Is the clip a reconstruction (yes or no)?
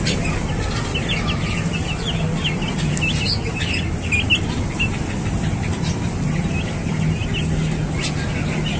no